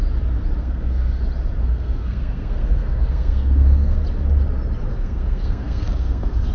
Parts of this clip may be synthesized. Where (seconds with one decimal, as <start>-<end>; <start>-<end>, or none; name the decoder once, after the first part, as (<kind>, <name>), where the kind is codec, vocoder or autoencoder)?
0.6-1.2 (codec, SNAC); 1.6-4.0; 4.9-6.5